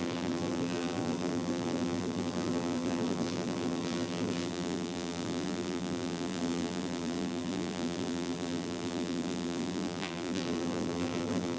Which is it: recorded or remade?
remade